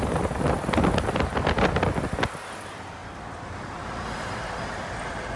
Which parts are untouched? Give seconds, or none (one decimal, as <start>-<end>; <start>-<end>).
0.0-3.0; 3.8-5.4

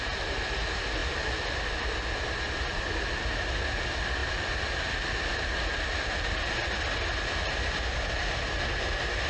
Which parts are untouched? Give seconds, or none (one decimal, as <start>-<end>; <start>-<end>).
0.0-4.2; 6.2-9.3